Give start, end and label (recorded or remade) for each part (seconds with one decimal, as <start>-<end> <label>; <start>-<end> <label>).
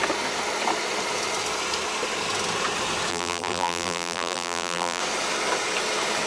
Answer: 0.0-3.1 recorded; 3.1-5.0 remade; 5.0-6.3 recorded